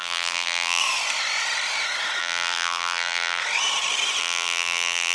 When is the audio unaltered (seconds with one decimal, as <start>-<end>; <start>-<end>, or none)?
0.8-2.2; 3.4-4.2